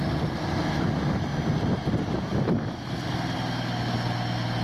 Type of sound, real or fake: real